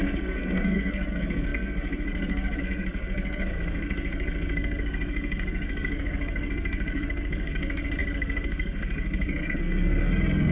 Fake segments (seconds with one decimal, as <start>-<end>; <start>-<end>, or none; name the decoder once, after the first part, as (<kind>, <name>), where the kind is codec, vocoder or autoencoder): 0.0-10.5 (codec, SNAC)